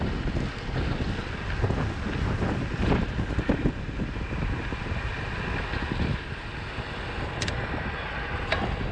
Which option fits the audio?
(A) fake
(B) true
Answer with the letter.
B